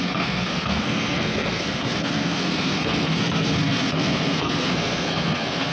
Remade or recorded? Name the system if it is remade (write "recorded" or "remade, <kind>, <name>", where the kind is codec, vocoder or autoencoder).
remade, codec, SNAC